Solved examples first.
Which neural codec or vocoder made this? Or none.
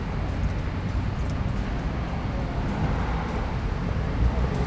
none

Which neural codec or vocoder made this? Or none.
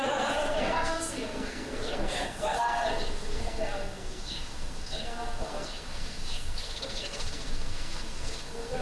codec, SNAC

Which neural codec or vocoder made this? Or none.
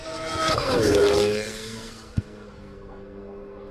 codec, SNAC